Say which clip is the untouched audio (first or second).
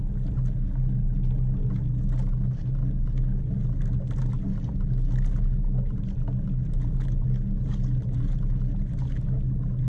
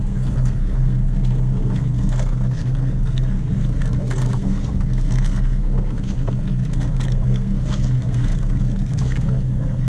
first